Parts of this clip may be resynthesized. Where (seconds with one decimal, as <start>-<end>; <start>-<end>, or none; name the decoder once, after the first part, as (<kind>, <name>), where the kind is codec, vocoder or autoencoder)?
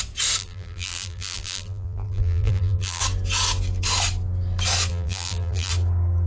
0.4-3.0 (vocoder, BigVGAN v2); 4.9-5.7